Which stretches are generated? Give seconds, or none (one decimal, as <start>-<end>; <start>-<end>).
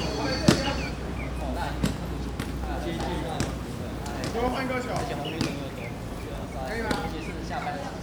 none